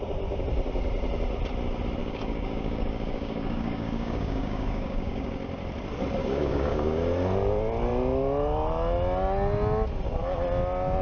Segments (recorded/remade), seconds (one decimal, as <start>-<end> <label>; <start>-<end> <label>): 0.0-2.0 recorded; 2.0-5.3 remade; 5.3-6.2 recorded; 6.2-7.0 remade; 7.0-11.0 recorded